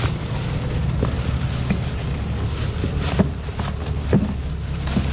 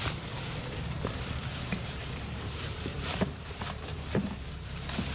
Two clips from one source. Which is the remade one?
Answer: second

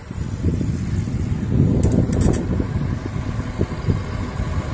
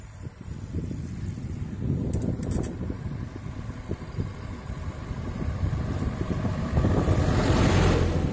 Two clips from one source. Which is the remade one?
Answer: second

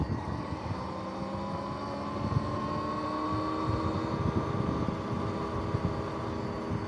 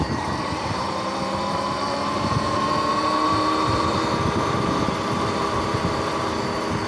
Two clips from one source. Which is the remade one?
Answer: second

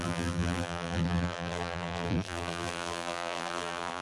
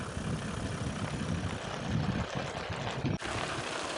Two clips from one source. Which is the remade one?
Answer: first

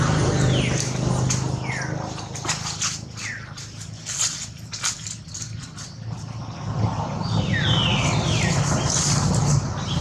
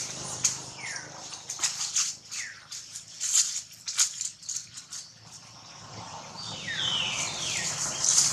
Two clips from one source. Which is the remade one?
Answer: second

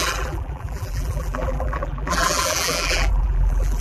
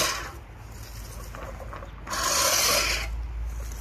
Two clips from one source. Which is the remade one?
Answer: first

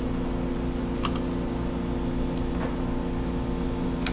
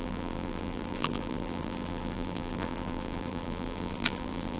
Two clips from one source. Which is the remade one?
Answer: second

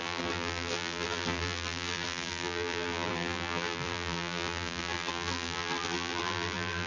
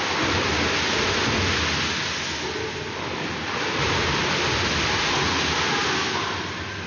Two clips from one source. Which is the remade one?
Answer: first